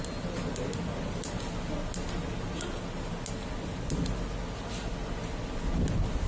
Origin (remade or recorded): recorded